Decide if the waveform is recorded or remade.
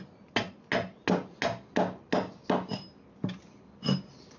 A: recorded